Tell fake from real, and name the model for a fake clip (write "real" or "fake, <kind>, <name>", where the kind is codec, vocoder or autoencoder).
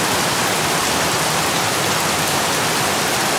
fake, vocoder, BigVGAN v2